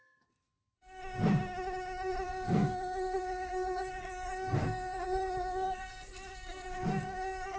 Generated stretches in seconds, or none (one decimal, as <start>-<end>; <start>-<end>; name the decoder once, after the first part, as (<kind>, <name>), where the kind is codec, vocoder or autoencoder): 0.0-1.0 (codec, SNAC); 2.2-7.6